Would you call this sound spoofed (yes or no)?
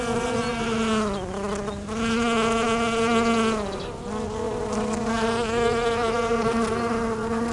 no